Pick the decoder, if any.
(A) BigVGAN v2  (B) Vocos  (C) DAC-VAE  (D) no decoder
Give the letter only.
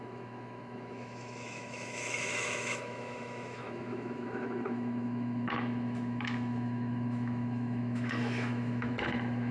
C